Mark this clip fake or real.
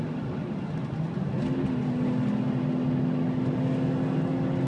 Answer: real